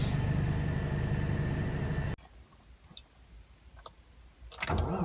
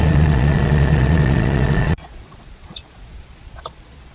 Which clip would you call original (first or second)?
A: first